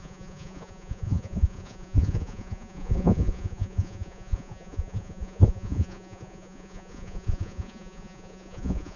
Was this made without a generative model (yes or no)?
no